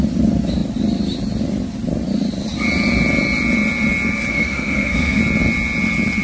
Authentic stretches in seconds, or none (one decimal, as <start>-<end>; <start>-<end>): 0.0-4.3; 5.2-6.2